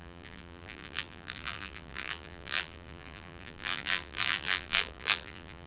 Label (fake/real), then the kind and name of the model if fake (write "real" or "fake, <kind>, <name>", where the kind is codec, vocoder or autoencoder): fake, vocoder, BigVGAN v2